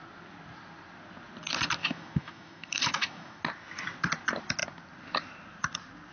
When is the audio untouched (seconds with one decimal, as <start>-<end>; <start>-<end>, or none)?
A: 0.0-1.8; 3.4-6.1